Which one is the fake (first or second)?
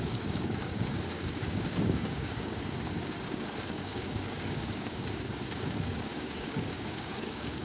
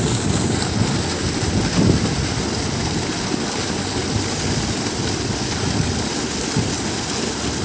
first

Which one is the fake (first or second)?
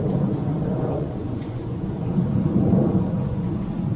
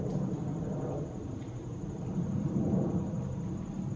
first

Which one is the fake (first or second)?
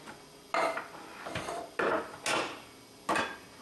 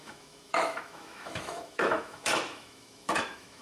second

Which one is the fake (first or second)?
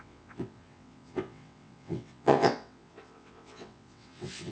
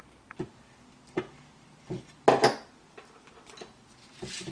first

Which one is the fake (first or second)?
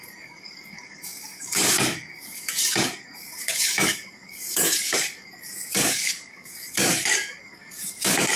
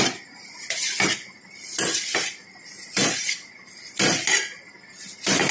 first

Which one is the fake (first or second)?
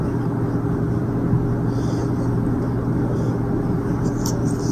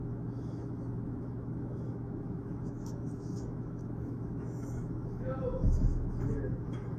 second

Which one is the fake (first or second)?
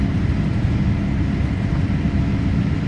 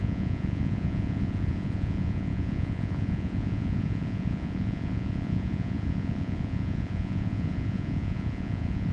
second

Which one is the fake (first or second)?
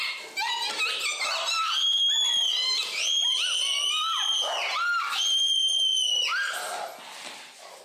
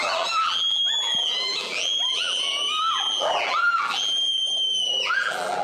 second